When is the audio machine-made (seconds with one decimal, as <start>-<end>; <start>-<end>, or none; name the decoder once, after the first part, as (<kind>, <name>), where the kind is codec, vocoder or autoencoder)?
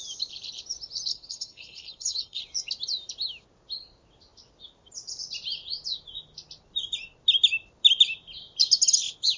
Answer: 1.1-2.4 (codec, HILCodec)